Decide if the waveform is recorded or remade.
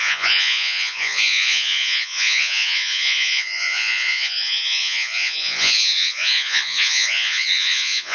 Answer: remade